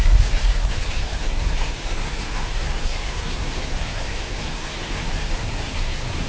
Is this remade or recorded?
remade